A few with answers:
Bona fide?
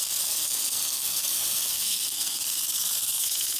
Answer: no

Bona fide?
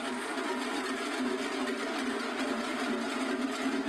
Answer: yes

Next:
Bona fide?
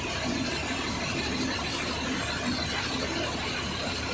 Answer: yes